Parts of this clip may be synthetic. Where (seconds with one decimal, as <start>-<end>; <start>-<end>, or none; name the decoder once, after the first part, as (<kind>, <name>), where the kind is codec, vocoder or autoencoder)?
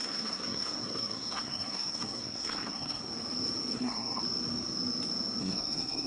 0.0-3.0 (codec, SNAC); 3.7-4.2; 5.4-6.1